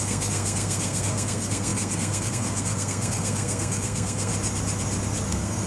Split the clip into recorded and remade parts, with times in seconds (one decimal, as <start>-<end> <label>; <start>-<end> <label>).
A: 0.0-4.3 remade; 4.3-5.3 recorded; 5.3-5.7 remade